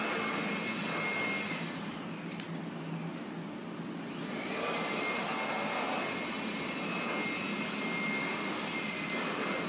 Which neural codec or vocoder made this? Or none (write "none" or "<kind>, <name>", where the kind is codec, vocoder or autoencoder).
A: none